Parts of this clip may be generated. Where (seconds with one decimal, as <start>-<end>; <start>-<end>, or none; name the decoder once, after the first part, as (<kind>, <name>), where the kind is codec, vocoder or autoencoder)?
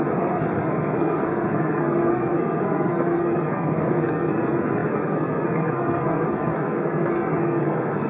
0.0-8.1 (codec, SNAC)